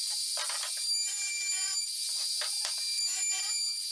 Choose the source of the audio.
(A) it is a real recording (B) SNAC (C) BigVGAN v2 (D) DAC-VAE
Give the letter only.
A